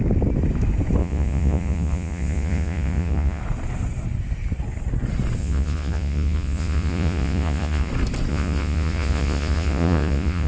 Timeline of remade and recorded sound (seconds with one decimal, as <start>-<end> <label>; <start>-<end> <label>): 0.0-1.0 recorded; 1.0-3.4 remade; 3.4-5.4 recorded; 5.4-7.9 remade; 7.9-8.3 recorded; 8.3-10.5 remade